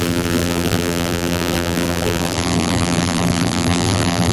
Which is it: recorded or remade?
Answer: remade